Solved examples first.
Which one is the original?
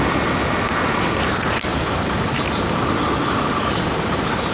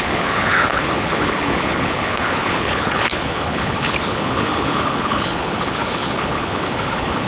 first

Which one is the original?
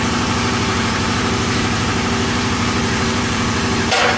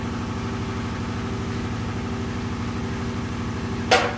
second